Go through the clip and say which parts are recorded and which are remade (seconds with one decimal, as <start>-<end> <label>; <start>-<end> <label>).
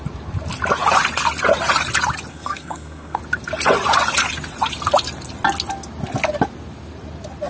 0.0-2.3 recorded; 2.3-3.2 remade; 3.2-7.5 recorded